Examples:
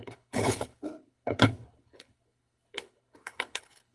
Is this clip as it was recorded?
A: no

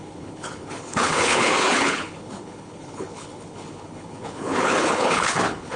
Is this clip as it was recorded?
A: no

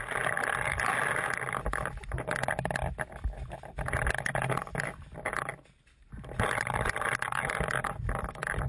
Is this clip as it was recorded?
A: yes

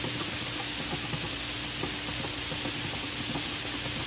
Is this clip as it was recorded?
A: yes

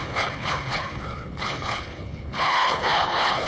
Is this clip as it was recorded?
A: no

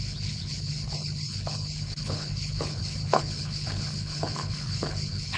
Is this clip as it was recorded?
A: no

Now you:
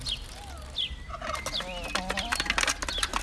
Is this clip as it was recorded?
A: yes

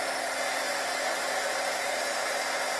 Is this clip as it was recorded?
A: yes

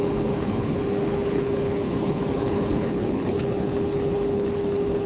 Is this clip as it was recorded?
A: no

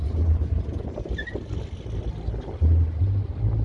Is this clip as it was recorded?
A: yes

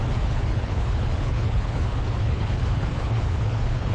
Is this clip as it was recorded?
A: no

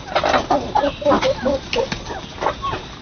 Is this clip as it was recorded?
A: yes